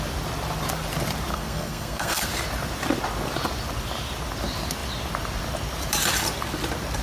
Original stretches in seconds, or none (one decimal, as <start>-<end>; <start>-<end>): 0.0-1.3; 2.3-7.0

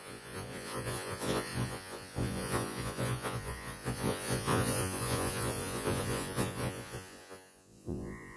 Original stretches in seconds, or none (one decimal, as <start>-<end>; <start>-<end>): none

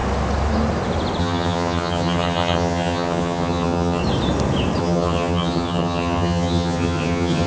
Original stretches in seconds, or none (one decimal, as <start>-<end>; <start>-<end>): 0.0-1.2; 4.0-4.8